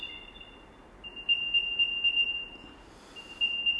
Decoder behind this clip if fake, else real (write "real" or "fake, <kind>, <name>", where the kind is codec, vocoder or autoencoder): real